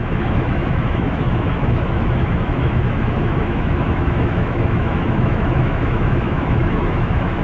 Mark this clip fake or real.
fake